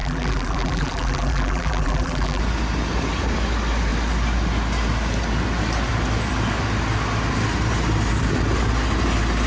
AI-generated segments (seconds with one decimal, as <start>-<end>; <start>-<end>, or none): 0.0-2.4